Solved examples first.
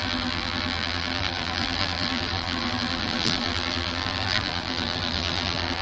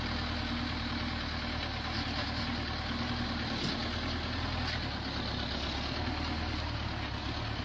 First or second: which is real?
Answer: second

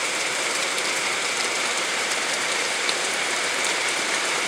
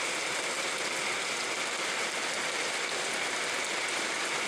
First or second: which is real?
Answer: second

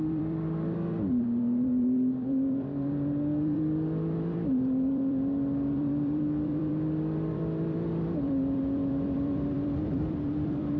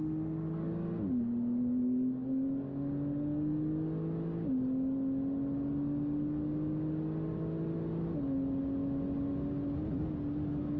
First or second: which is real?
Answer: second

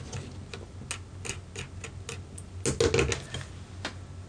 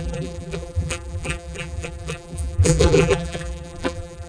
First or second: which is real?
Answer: first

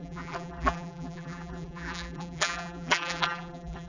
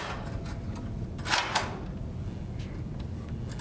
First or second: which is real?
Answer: second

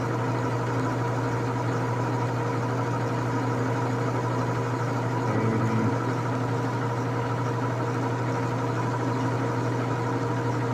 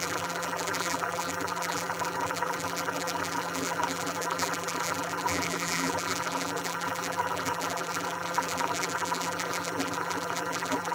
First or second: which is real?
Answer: first